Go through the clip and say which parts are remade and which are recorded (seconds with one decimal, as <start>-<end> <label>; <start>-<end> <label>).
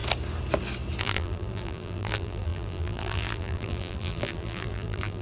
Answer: 0.0-1.0 recorded; 1.0-5.2 remade